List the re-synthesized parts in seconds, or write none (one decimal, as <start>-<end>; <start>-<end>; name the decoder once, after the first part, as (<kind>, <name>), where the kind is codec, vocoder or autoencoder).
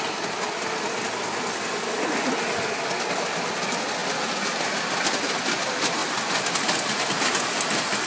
none